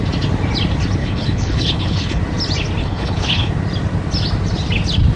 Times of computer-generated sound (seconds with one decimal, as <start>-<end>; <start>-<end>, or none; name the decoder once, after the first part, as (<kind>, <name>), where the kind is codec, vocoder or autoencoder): 1.0-2.2 (codec, HILCodec); 2.8-3.5